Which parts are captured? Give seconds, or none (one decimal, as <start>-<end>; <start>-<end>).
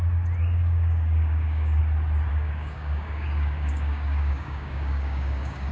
0.0-0.4; 1.8-2.3